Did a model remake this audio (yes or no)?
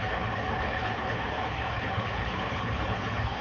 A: yes